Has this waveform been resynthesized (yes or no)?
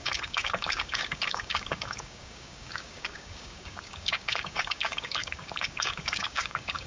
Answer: yes